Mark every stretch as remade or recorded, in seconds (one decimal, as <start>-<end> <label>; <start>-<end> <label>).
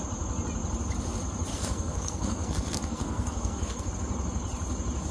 0.0-1.5 recorded; 1.5-3.9 remade; 3.9-5.1 recorded